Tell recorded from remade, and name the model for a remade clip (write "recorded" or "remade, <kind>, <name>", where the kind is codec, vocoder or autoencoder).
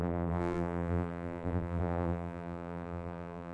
remade, vocoder, BigVGAN v2